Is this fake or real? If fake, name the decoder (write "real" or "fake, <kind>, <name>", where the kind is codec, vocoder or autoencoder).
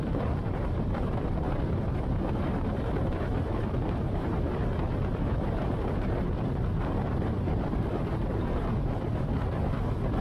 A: fake, vocoder, BigVGAN v2